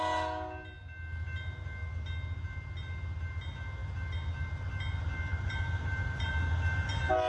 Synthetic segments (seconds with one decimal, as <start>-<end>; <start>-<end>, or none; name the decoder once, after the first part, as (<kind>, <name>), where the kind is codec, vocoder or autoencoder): 5.3-6.3 (vocoder, BigVGAN v2)